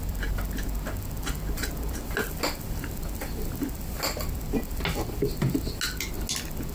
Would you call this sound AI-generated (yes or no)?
no